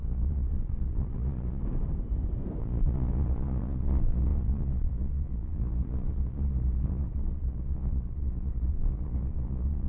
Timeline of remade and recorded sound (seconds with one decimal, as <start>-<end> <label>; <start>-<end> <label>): 0.0-1.6 remade; 1.6-2.6 recorded; 2.6-9.9 remade